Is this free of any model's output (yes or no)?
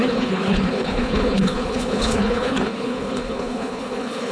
no